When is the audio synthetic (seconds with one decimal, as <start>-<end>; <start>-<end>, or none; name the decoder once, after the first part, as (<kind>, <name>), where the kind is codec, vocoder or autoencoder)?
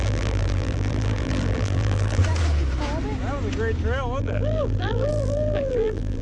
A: 0.0-2.2 (vocoder, BigVGAN v2); 4.2-6.2